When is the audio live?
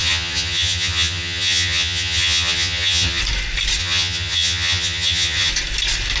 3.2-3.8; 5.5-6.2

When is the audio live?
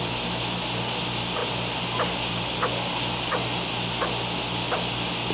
0.0-5.3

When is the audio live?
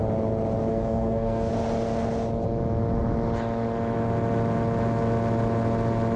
0.0-0.7; 1.5-6.2